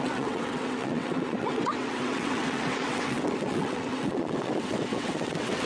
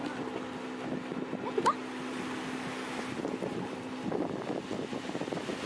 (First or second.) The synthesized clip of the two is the first